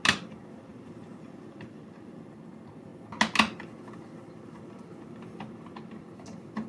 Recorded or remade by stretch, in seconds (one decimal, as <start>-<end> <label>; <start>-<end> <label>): 0.0-0.7 recorded; 0.7-1.8 remade; 1.8-6.7 recorded